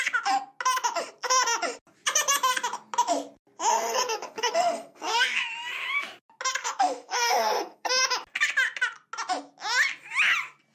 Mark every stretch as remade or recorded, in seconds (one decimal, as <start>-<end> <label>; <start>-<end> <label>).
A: 0.0-3.7 recorded; 3.7-5.4 remade; 5.4-6.6 recorded; 6.6-7.9 remade; 7.9-10.7 recorded